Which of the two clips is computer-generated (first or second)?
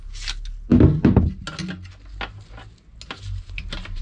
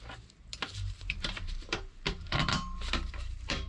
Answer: second